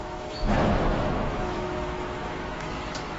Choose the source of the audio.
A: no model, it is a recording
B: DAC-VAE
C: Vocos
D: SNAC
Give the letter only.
B